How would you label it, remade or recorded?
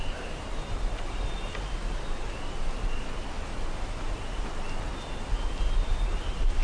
recorded